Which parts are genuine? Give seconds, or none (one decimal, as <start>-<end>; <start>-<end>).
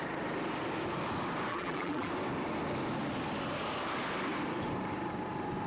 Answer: 0.0-1.5; 2.1-5.7